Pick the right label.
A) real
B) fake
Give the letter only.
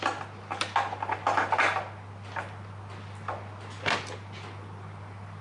A